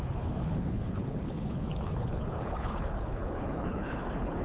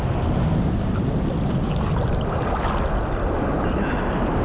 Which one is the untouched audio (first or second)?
second